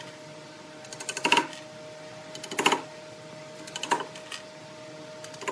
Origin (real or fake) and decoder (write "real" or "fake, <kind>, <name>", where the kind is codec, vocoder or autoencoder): real